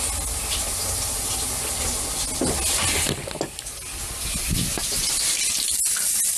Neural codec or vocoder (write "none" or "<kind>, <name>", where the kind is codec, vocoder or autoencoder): none